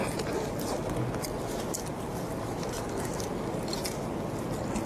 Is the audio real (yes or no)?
yes